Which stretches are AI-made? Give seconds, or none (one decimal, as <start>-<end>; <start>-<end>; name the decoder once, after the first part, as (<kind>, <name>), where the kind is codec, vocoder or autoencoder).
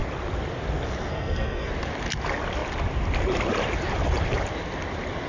1.1-1.7 (codec, SNAC)